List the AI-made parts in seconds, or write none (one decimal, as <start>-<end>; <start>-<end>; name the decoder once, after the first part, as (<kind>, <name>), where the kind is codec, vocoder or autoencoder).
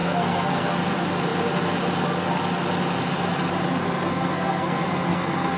0.0-0.7 (codec, SNAC); 4.1-5.6